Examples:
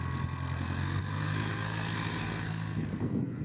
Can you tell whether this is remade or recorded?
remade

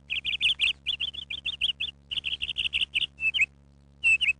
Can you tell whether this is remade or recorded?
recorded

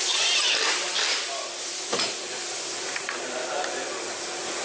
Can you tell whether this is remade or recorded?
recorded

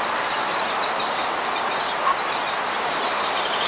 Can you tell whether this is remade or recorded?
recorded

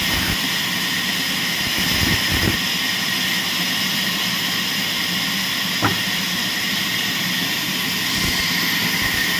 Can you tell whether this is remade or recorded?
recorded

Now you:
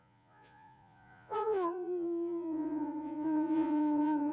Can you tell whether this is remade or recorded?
remade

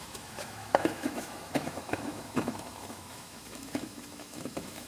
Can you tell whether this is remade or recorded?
remade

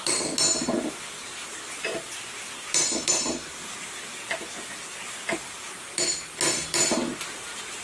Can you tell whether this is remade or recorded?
recorded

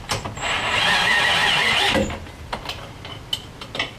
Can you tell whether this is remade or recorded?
recorded